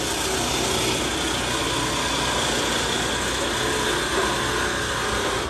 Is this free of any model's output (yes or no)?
yes